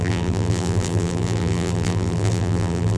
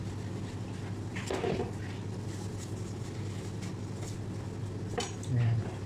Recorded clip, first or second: second